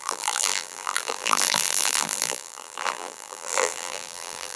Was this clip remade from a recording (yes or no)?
yes